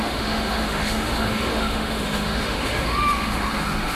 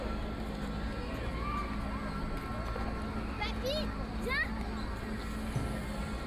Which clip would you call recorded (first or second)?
second